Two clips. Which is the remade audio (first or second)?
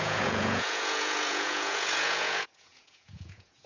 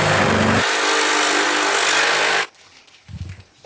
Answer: first